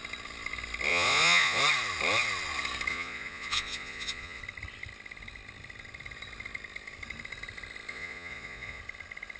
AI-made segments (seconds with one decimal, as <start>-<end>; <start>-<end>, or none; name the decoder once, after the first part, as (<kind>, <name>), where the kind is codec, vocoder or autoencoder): 0.9-1.6 (vocoder, Vocos); 2.9-4.4; 7.9-8.8